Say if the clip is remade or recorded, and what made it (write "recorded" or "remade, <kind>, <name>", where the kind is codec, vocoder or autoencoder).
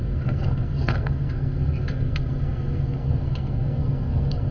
remade, codec, SNAC